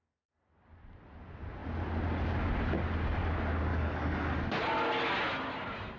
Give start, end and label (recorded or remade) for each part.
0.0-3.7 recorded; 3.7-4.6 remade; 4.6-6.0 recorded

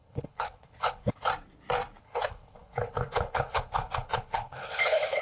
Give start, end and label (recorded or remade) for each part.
0.0-1.3 remade; 1.3-2.0 recorded; 2.0-5.2 remade

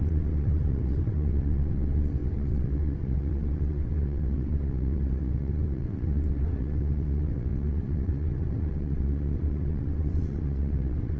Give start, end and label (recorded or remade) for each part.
0.0-11.2 remade

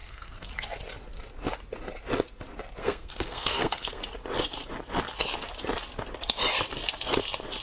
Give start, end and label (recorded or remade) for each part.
0.0-0.5 remade; 0.5-2.8 recorded; 2.8-4.0 remade; 4.0-7.6 recorded

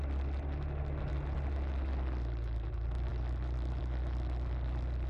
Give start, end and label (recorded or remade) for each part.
0.0-5.1 recorded

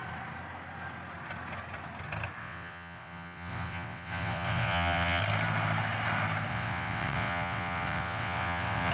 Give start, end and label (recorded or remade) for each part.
0.0-2.4 recorded; 2.4-5.2 remade; 5.2-6.5 recorded; 6.5-8.9 remade

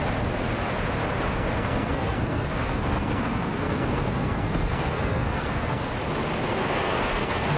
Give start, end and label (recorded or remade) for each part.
0.0-1.3 recorded; 1.3-5.9 remade; 5.9-6.5 recorded; 6.5-7.6 remade